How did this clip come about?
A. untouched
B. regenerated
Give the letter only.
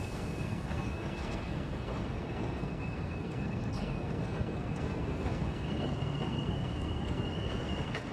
B